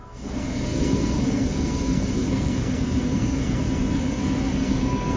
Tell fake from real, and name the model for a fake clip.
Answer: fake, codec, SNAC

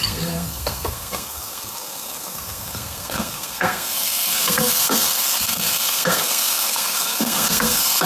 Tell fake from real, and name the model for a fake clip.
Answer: fake, codec, SNAC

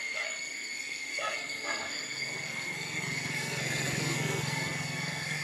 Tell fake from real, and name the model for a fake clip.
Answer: fake, codec, SNAC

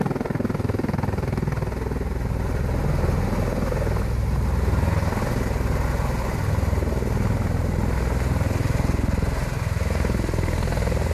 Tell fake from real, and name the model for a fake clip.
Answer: real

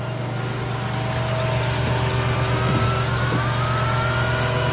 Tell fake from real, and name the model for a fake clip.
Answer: real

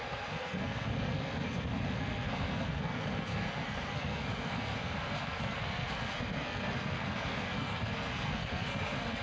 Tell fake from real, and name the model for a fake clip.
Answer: fake, codec, SNAC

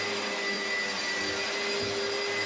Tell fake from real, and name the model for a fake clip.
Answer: real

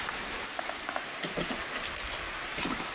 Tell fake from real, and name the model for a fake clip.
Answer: real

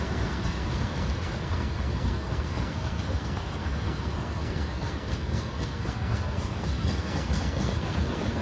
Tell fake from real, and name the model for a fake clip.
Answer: fake, codec, SNAC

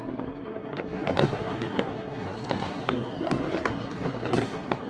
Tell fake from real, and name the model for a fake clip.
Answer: fake, codec, SNAC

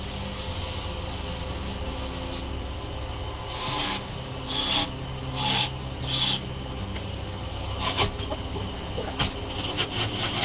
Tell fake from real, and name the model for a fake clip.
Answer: real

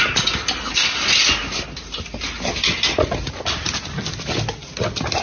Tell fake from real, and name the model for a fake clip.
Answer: real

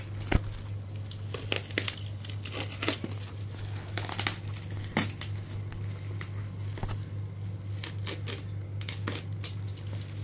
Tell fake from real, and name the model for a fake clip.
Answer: real